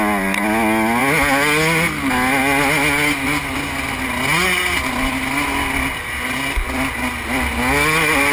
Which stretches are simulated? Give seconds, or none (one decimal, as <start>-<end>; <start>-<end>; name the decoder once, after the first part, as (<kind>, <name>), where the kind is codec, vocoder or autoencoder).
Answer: none